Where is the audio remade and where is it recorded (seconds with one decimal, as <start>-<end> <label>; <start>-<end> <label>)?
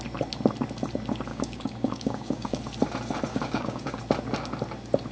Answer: 0.0-1.3 recorded; 1.3-2.6 remade; 2.6-3.3 recorded; 3.3-4.0 remade; 4.0-5.1 recorded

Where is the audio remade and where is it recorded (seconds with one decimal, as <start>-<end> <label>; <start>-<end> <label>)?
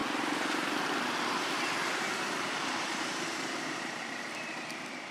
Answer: 0.0-0.9 remade; 0.9-1.8 recorded; 1.8-4.2 remade; 4.2-5.1 recorded